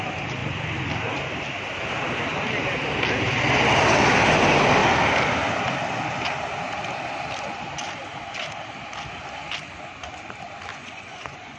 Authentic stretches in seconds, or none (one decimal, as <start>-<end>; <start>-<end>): 0.0-10.7